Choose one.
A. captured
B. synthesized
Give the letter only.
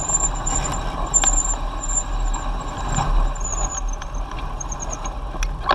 A